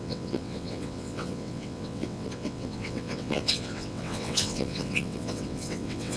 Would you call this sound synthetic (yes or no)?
yes